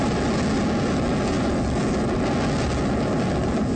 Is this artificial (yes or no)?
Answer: no